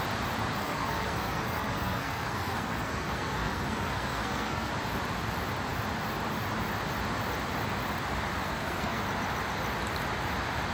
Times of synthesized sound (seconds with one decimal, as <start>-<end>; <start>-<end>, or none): 0.6-4.7; 8.4-9.0